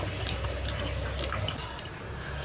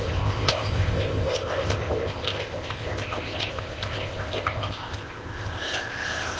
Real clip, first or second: first